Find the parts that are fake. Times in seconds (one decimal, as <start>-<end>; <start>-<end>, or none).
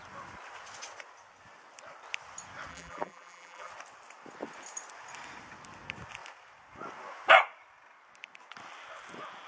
2.7-3.7